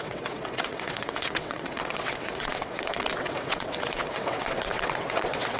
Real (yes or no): no